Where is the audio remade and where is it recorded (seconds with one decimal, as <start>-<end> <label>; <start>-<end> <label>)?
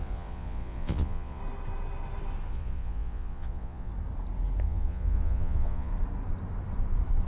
0.0-1.4 remade; 1.4-2.5 recorded; 2.5-3.9 remade; 3.9-4.6 recorded; 4.6-5.9 remade; 5.9-7.3 recorded